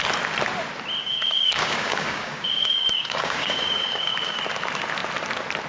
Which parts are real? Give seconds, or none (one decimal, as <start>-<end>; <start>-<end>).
0.0-1.0; 4.4-5.7